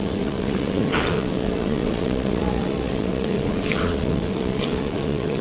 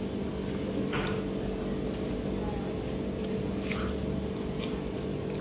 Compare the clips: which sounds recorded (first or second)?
second